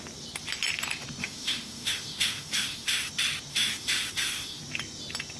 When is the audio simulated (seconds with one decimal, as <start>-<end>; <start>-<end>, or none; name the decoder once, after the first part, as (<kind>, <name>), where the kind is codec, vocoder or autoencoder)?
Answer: 1.2-3.1 (autoencoder, DAC-VAE); 3.5-4.6